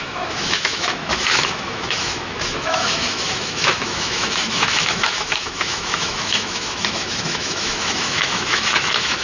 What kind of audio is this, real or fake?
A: fake